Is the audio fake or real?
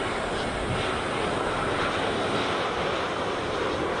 real